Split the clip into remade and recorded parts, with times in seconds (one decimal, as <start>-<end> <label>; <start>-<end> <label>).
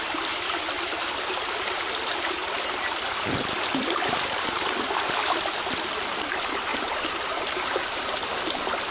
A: 0.0-2.1 remade; 2.1-6.1 recorded; 6.1-8.9 remade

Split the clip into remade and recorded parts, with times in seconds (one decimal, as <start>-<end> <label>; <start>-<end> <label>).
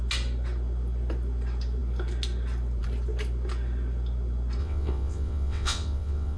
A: 0.0-4.6 recorded; 4.6-6.4 remade